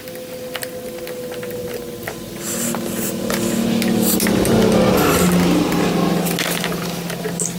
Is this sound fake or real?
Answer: real